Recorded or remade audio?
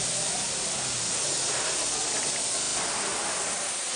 recorded